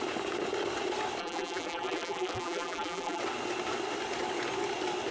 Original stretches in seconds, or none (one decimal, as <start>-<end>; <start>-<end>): 0.0-1.2; 3.2-5.1